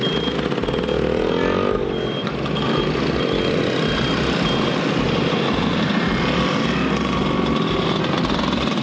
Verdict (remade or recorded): recorded